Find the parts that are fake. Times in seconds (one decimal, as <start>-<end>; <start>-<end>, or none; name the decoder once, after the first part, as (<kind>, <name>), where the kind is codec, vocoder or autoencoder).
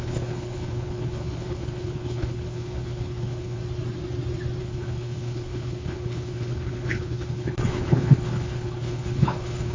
0.0-3.6 (codec, HILCodec); 4.6-9.7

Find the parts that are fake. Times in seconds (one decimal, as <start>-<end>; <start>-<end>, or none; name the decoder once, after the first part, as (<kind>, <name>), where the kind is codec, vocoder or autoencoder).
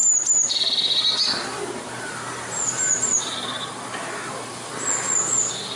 none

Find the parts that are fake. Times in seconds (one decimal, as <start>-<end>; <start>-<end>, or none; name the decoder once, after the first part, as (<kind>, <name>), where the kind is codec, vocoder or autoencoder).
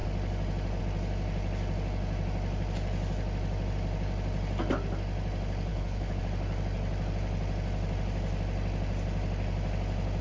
5.7-6.2 (codec, HILCodec)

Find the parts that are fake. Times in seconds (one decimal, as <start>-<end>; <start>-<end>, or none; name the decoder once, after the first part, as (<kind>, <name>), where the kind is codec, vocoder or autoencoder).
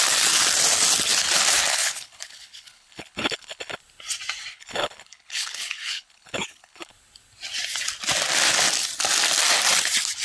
1.7-3.8 (codec, HILCodec); 4.5-6.9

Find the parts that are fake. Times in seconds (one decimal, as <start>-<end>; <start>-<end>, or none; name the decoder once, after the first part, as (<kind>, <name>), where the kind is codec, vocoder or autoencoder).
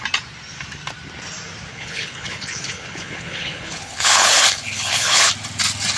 1.7-5.3 (codec, HILCodec)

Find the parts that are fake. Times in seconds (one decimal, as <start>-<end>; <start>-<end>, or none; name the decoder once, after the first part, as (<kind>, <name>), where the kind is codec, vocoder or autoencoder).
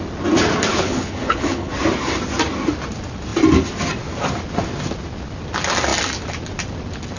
0.7-1.7 (codec, HILCodec)